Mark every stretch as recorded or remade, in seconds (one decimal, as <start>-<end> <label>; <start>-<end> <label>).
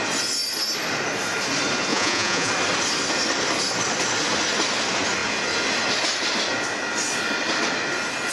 0.0-1.9 recorded; 1.9-2.5 remade; 2.5-8.3 recorded